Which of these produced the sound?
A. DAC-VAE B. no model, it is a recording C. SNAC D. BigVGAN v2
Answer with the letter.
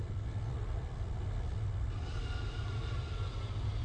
B